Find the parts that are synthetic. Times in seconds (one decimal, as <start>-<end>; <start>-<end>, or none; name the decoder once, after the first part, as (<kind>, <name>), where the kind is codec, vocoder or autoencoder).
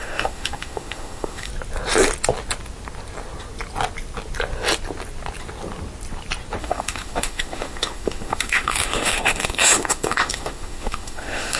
0.0-1.5 (autoencoder, DAC-VAE); 6.6-11.6